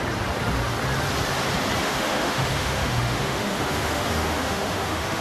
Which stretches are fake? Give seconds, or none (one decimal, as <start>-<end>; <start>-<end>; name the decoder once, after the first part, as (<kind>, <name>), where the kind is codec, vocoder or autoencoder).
1.8-5.2 (autoencoder, DAC-VAE)